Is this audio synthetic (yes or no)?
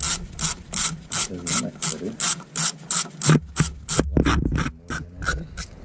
no